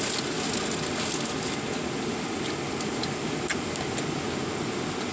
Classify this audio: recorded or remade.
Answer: recorded